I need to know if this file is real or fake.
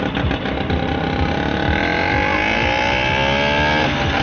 real